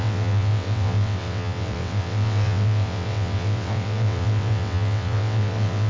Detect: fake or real fake